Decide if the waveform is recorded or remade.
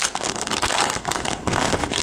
remade